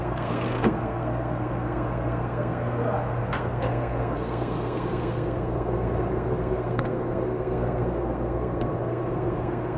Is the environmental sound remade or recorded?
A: remade